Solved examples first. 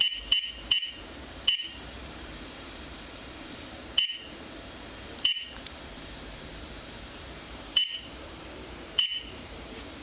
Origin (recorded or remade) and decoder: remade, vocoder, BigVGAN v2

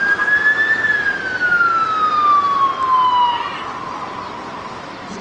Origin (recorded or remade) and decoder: recorded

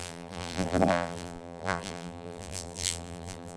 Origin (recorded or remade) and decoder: remade, vocoder, BigVGAN v2